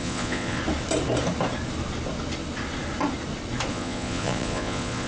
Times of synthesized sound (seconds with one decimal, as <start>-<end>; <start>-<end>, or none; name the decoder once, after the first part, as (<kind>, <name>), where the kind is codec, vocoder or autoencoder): 0.0-0.6 (vocoder, Vocos); 3.7-5.1